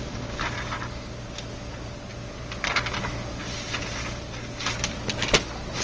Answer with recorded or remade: recorded